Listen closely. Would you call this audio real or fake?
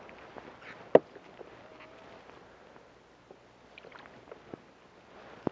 real